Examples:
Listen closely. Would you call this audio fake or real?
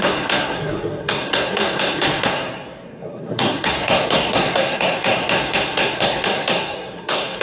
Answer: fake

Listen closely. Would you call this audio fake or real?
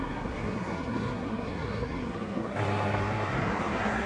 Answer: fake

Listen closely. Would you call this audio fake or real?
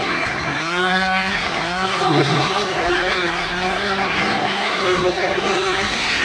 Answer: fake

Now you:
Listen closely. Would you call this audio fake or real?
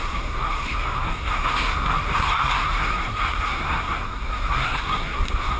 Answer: fake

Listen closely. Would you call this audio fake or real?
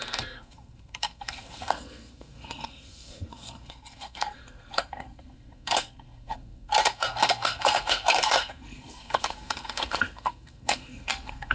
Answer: fake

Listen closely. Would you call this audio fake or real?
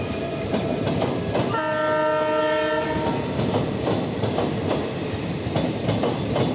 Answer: real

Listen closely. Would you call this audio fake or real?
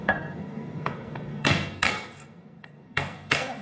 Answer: fake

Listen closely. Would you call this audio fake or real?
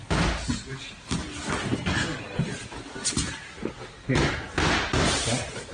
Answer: real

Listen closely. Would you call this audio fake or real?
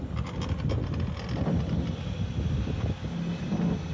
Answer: real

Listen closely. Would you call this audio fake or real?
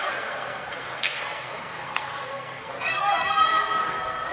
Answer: fake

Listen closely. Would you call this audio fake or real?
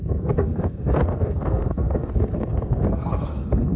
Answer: fake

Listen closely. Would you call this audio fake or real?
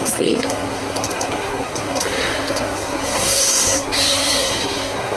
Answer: fake